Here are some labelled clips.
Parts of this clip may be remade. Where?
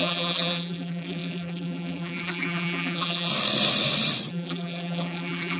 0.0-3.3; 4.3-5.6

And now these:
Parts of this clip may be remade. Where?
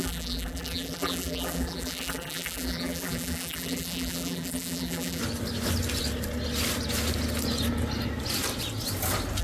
0.0-5.2